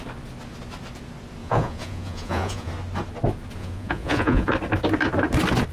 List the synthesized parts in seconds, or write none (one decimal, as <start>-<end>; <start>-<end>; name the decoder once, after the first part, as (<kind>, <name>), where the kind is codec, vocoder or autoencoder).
1.4-2.7 (vocoder, Vocos); 3.6-4.5